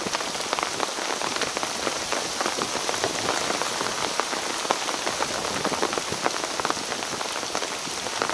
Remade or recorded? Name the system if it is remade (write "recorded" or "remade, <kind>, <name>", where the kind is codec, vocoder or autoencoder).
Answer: recorded